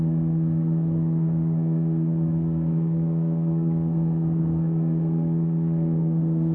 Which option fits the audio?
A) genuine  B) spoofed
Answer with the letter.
B